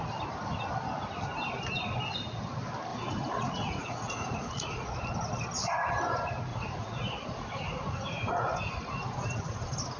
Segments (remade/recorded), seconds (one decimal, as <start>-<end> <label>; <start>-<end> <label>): 0.0-2.9 recorded; 2.9-4.9 remade; 4.9-6.5 recorded; 6.5-10.0 remade